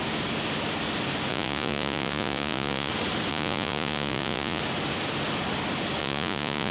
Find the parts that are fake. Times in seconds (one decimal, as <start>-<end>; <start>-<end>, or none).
1.3-2.9; 3.3-4.6; 6.0-6.7